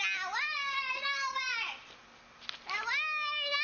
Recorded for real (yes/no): yes